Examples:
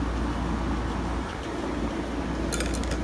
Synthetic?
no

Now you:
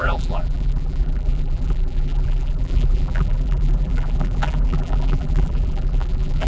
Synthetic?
yes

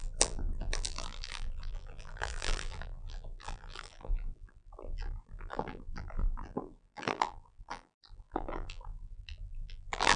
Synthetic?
yes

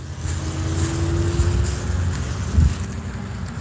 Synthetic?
no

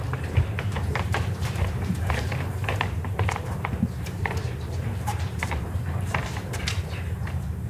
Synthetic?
yes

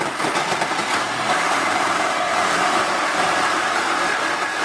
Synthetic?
yes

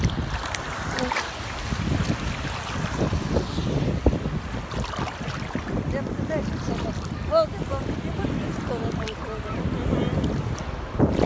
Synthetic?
no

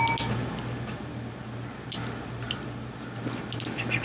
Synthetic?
no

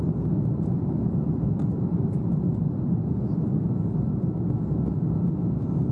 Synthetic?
no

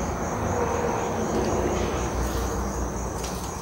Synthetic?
no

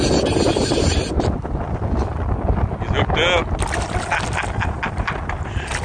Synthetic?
no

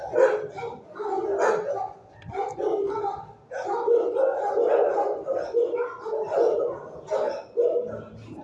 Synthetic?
no